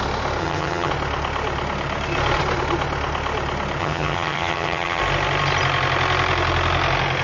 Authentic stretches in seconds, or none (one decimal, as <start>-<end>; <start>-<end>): 0.0-0.4; 0.9-3.8; 5.0-7.2